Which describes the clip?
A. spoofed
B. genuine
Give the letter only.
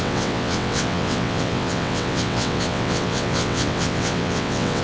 A